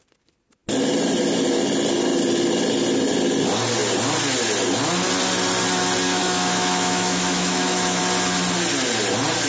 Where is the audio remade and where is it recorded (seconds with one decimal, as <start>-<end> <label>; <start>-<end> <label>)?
0.0-6.2 recorded; 6.2-8.0 remade; 8.0-9.5 recorded